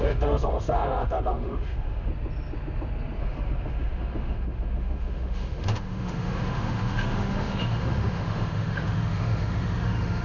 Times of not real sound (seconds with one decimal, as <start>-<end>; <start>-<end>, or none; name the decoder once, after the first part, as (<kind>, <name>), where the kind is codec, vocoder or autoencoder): 0.0-2.1 (autoencoder, DAC-VAE); 3.2-10.2